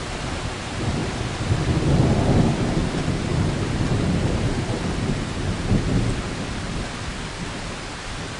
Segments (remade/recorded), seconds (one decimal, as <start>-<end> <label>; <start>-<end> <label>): 0.0-8.4 recorded